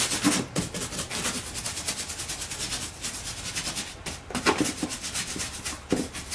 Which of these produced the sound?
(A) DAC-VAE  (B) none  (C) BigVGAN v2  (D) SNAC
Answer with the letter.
B